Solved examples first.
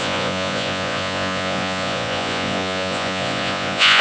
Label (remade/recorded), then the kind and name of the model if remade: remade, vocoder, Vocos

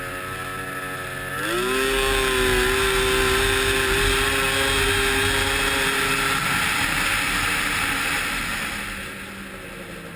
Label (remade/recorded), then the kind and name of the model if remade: recorded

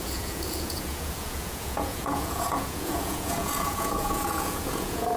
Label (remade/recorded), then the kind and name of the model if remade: remade, vocoder, Vocos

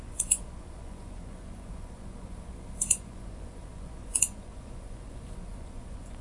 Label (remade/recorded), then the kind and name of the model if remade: remade, vocoder, Vocos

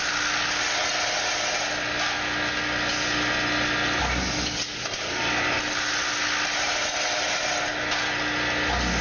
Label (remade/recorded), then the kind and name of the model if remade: recorded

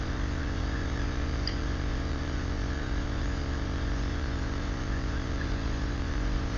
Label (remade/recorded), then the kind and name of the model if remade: remade, vocoder, Vocos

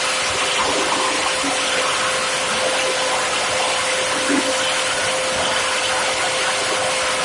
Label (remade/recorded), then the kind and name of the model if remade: recorded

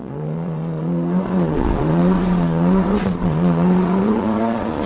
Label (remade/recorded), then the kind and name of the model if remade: remade, vocoder, Vocos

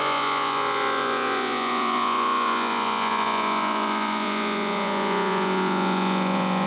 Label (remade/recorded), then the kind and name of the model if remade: remade, vocoder, Vocos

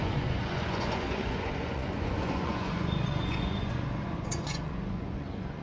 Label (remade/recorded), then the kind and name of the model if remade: remade, vocoder, Vocos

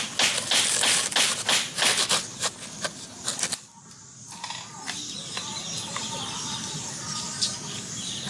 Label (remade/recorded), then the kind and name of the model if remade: recorded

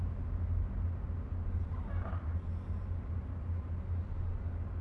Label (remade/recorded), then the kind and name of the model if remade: recorded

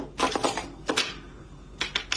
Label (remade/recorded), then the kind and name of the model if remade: recorded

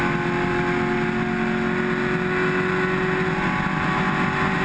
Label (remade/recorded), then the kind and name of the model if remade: recorded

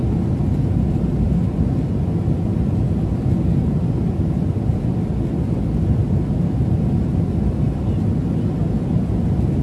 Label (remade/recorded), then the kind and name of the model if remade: recorded